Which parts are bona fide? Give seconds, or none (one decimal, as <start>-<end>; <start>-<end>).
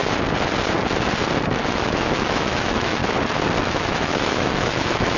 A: 0.0-1.5; 3.0-3.6